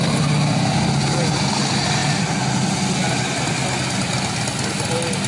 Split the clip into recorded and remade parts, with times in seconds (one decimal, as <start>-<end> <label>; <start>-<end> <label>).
0.0-5.3 recorded